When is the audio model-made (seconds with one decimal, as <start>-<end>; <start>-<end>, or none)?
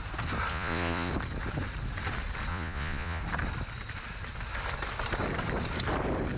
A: 0.5-1.1; 2.5-3.2